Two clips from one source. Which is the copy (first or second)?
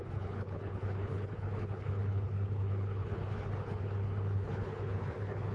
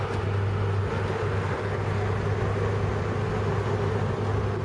first